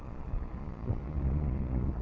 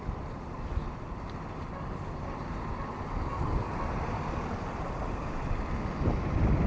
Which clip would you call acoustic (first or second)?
second